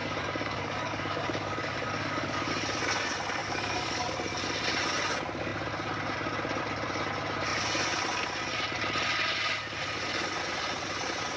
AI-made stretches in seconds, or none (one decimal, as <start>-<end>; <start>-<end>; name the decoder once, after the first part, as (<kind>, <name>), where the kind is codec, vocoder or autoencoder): 0.0-2.5 (codec, DAC); 3.4-4.1